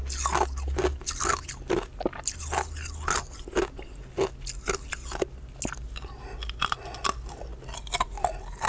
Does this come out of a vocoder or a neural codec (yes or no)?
no